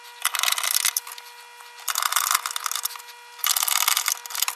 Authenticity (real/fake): real